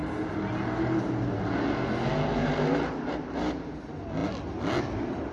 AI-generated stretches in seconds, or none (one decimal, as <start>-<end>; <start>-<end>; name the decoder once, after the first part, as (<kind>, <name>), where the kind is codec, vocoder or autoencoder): 2.4-3.7 (vocoder, BigVGAN v2)